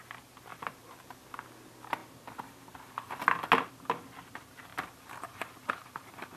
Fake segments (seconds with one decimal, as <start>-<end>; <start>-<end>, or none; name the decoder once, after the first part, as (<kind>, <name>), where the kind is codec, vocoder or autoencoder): 0.5-1.3 (vocoder, BigVGAN v2); 4.7-6.4